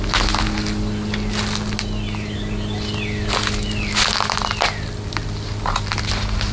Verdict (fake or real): real